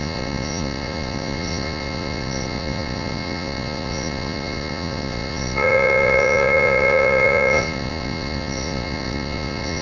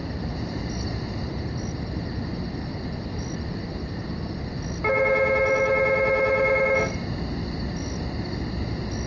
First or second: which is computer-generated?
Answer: first